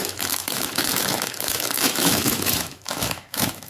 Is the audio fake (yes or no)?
yes